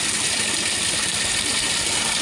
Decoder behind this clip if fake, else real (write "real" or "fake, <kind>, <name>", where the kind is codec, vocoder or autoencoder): real